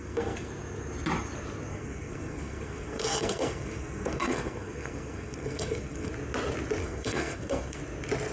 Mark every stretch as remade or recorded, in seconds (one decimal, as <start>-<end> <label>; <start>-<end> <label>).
0.0-0.5 remade; 0.5-1.7 recorded; 1.7-6.1 remade; 6.1-6.8 recorded; 6.8-7.8 remade; 7.8-8.3 recorded